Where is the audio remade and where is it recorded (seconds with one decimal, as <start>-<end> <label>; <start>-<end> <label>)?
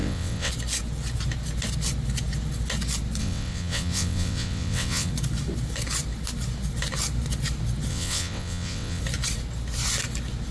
0.0-0.5 remade; 0.5-3.2 recorded; 3.2-5.1 remade; 5.1-7.9 recorded; 7.9-9.0 remade; 9.0-10.5 recorded